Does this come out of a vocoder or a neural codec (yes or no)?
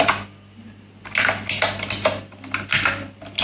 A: no